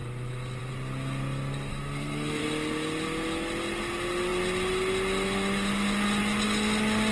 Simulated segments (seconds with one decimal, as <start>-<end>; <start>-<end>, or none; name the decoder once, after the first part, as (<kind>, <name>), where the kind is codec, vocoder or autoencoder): 1.7-2.4 (codec, SNAC)